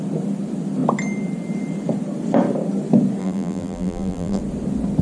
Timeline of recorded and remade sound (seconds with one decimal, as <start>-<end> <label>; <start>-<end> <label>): 0.0-3.2 recorded; 3.2-4.4 remade; 4.4-5.0 recorded